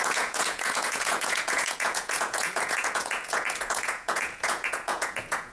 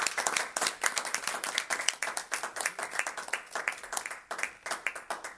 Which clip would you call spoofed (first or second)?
first